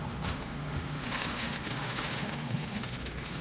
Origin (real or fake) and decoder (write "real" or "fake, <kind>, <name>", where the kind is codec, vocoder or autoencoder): fake, autoencoder, DAC-VAE